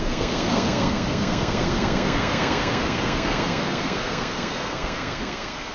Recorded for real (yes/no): no